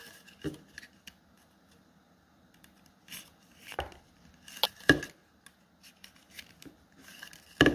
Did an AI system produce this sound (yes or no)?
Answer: no